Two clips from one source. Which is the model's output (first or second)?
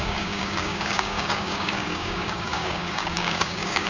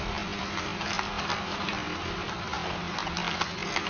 first